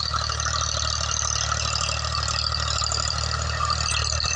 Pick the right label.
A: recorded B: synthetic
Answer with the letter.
A